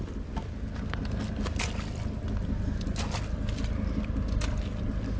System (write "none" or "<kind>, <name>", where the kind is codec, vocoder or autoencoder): none